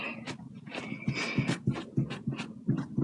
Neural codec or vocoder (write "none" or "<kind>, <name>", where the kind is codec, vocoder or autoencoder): none